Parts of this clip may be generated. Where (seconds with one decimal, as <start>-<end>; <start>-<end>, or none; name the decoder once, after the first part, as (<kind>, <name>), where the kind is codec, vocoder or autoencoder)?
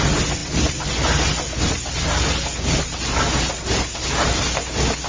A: none